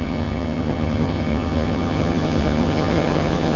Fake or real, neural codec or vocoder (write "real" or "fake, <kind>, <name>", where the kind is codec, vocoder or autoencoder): fake, vocoder, HiFi-GAN